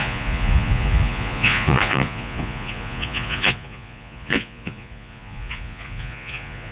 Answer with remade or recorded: remade